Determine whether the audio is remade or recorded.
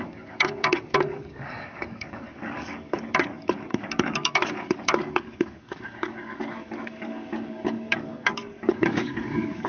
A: remade